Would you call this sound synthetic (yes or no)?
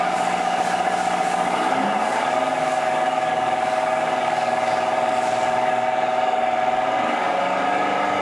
yes